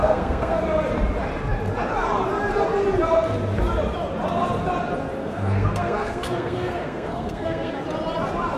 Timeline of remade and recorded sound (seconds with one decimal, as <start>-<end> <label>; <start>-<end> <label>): 0.0-0.6 remade; 0.6-5.2 recorded; 5.2-7.7 remade; 7.7-8.6 recorded